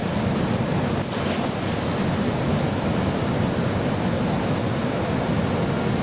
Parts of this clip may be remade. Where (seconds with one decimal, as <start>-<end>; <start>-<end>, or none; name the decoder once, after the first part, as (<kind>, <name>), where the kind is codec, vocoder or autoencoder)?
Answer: 0.0-1.0 (vocoder, BigVGAN v2)